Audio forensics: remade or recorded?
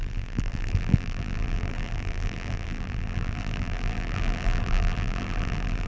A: remade